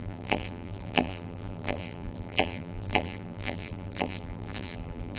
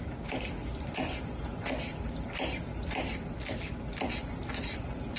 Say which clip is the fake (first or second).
first